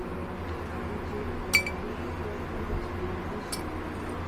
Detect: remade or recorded recorded